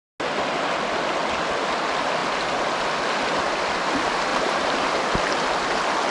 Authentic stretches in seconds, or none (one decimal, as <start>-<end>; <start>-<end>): 0.0-4.3; 5.1-6.1